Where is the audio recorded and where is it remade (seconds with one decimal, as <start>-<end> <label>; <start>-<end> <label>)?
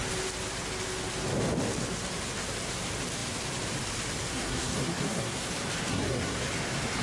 0.0-4.3 recorded; 4.3-5.5 remade; 5.5-5.9 recorded; 5.9-6.5 remade; 6.5-7.0 recorded